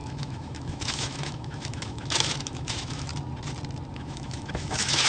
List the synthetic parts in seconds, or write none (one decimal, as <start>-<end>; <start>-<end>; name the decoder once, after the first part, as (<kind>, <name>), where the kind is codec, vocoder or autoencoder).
0.0-3.1 (autoencoder, DAC-VAE); 3.9-5.1